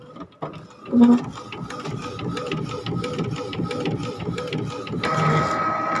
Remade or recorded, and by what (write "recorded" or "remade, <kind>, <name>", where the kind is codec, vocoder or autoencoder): recorded